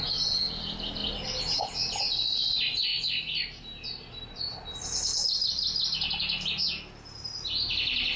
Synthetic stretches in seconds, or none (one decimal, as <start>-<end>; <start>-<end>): none

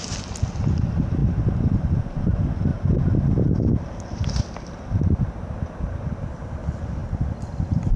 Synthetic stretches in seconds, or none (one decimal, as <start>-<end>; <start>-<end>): none

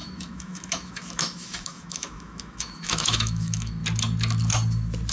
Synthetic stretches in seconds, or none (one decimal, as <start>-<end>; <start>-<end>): 0.0-3.8

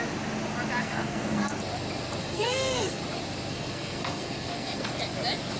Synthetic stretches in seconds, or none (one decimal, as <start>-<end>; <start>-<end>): 0.8-1.4; 2.2-3.0; 3.5-4.9

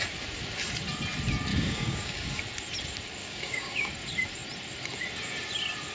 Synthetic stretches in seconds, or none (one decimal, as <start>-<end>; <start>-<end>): 1.5-2.4; 3.2-3.9

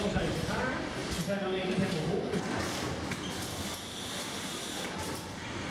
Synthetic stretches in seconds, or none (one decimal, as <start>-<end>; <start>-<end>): 0.0-1.0; 4.4-5.7

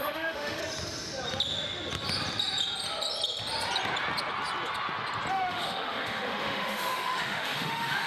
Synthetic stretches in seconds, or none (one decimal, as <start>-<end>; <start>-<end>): 0.0-0.6; 5.3-8.1

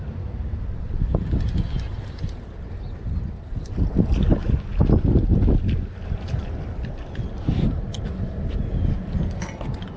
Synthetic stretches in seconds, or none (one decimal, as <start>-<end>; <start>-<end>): none